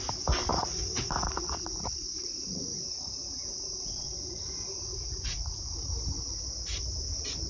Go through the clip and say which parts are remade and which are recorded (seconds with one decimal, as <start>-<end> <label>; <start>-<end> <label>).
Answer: 0.0-0.5 recorded; 0.5-3.0 remade; 3.0-3.5 recorded; 3.5-4.4 remade; 4.4-4.9 recorded; 4.9-5.5 remade; 5.5-7.5 recorded